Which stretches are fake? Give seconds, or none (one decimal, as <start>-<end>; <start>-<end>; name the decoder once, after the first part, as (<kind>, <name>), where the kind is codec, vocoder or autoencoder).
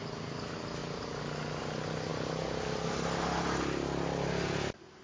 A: none